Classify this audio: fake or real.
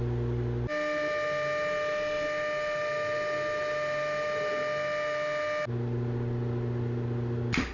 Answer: real